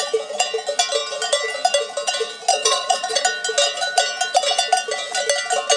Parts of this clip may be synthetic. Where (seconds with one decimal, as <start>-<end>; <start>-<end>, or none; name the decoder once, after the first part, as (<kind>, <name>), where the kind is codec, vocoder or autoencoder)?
2.5-3.2 (vocoder, Vocos)